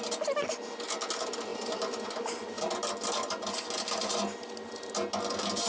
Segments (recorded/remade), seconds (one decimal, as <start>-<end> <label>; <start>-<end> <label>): 0.0-5.7 recorded